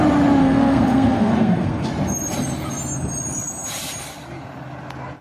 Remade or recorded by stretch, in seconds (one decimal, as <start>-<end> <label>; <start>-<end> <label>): 0.0-0.4 recorded; 0.4-1.9 remade; 1.9-5.2 recorded